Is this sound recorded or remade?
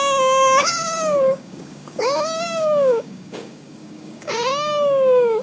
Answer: remade